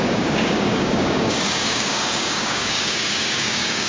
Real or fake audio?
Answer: fake